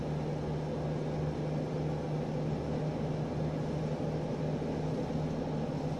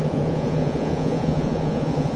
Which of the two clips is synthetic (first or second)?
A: second